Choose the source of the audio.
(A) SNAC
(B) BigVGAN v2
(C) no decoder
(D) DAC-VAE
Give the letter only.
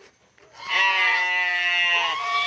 C